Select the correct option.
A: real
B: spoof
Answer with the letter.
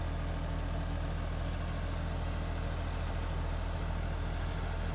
A